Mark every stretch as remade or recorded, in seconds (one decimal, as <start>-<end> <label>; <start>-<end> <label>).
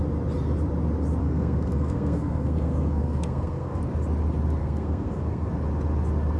0.0-1.2 recorded; 1.2-3.8 remade; 3.8-4.6 recorded; 4.6-5.5 remade; 5.5-6.4 recorded